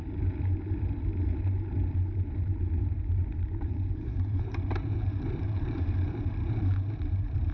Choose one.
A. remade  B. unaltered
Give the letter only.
A